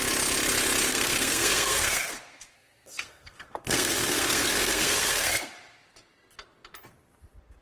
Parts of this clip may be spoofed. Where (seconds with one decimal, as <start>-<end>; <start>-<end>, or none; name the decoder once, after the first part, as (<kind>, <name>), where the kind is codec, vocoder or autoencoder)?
0.9-5.5 (codec, SNAC)